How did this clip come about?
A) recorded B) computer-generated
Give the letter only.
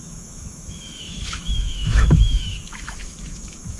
B